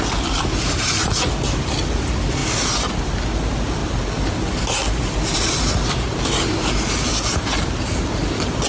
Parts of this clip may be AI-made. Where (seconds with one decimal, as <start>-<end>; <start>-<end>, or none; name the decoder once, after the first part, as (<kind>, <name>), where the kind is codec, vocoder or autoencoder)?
none